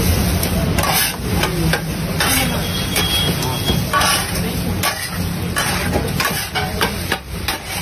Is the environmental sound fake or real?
real